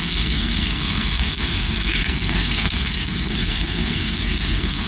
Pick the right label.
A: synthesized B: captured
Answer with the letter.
A